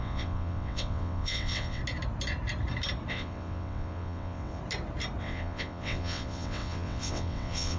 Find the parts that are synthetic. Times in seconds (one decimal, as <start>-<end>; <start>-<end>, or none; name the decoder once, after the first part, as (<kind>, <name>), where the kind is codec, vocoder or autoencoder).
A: 0.0-1.8 (vocoder, WaveNeXt); 3.1-4.6; 5.2-7.8